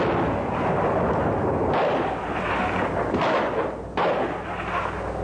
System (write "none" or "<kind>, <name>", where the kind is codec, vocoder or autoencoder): none